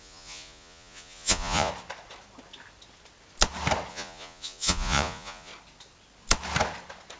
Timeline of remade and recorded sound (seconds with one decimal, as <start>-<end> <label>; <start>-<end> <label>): 0.0-1.7 remade; 1.7-3.9 recorded; 3.9-5.5 remade; 5.5-7.2 recorded